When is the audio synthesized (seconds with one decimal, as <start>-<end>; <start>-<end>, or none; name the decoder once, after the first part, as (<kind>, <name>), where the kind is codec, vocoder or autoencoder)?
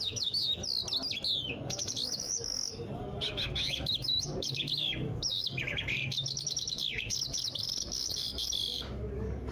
0.0-0.6 (codec, DAC); 1.5-9.5